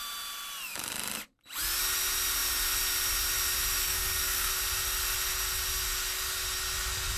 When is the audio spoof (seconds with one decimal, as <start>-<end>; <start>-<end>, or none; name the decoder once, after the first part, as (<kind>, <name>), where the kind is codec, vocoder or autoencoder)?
3.8-4.5 (codec, SNAC)